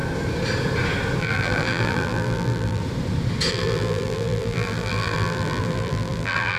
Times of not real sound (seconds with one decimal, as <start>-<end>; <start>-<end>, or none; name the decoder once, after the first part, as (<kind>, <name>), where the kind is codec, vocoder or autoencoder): 1.2-2.8 (vocoder, BigVGAN v2); 3.5-6.6